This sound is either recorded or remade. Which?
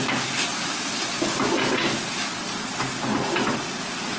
recorded